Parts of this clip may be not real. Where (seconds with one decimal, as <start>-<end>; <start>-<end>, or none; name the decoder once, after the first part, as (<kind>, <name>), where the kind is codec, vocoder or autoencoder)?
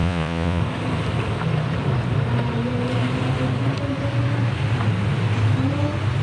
0.0-0.6 (vocoder, Vocos)